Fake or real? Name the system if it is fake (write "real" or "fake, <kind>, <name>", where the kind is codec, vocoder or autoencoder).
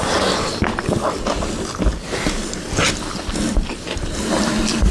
real